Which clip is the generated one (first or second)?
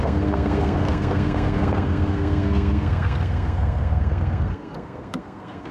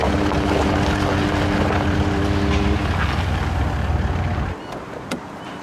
first